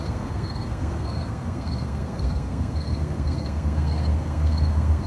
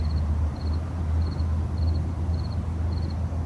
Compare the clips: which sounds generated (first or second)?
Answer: first